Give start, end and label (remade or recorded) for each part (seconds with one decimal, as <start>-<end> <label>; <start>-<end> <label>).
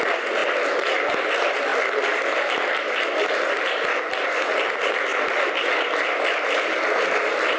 0.0-1.7 recorded; 1.7-2.9 remade; 2.9-7.6 recorded